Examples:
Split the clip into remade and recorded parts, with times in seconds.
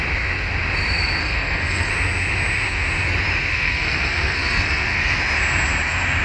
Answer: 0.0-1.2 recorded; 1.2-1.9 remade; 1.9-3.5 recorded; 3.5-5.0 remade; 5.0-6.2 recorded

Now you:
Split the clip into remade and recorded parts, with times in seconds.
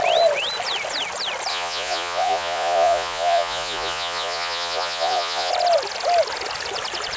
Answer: 0.0-1.5 recorded; 1.5-5.5 remade; 5.5-7.2 recorded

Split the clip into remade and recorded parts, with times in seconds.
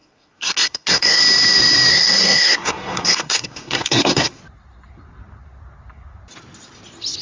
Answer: 0.0-1.2 remade; 1.2-1.9 recorded; 1.9-4.4 remade; 4.4-7.2 recorded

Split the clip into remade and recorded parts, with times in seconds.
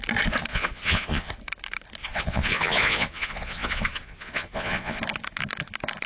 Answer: 0.0-0.5 recorded; 0.5-1.3 remade; 1.3-2.0 recorded; 2.0-5.0 remade; 5.0-6.1 recorded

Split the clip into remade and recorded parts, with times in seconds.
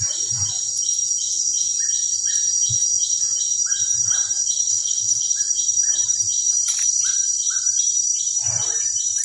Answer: 0.0-4.7 recorded; 4.7-5.3 remade; 5.3-9.2 recorded